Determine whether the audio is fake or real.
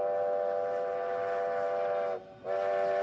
real